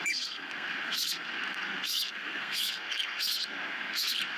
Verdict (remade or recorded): remade